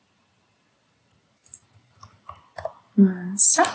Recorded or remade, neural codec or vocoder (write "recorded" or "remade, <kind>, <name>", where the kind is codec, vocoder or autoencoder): recorded